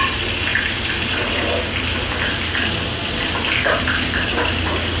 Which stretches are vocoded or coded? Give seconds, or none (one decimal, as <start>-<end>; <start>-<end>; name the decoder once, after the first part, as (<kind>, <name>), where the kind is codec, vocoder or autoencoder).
none